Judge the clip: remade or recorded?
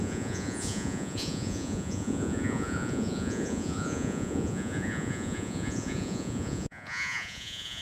remade